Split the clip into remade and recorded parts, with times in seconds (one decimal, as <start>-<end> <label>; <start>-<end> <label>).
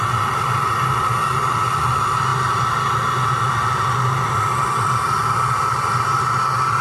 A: 0.0-6.8 recorded